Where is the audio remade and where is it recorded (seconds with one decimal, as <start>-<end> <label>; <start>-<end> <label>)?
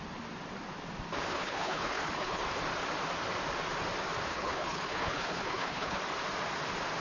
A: 0.0-1.3 recorded; 1.3-2.4 remade; 2.4-4.3 recorded; 4.3-6.0 remade; 6.0-7.0 recorded